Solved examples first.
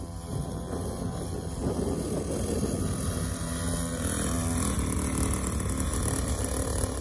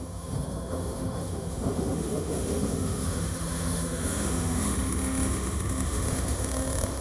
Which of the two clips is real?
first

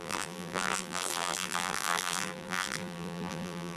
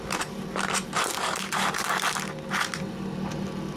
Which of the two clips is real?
second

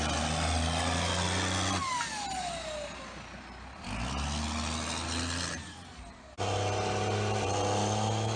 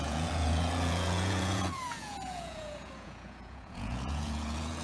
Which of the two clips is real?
first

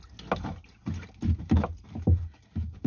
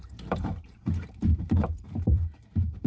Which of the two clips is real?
first